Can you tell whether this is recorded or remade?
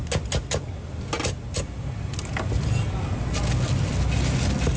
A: recorded